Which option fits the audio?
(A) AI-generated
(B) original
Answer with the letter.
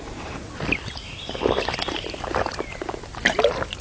B